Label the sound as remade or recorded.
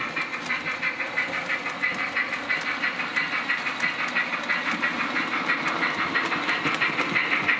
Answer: recorded